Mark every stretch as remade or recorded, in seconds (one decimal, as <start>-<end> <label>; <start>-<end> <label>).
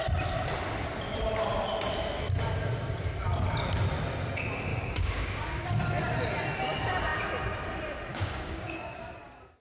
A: 0.0-4.7 recorded; 4.7-5.8 remade; 5.8-8.1 recorded; 8.1-9.1 remade; 9.1-9.6 recorded